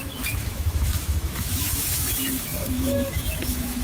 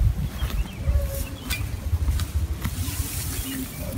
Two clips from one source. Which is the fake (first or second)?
first